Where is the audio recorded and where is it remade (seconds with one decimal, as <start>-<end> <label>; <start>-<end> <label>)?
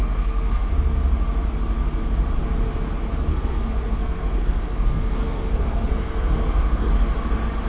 0.0-0.7 remade; 0.7-3.3 recorded; 3.3-6.9 remade; 6.9-7.7 recorded